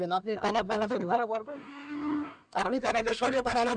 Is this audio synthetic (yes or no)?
yes